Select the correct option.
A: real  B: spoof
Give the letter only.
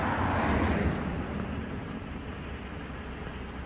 A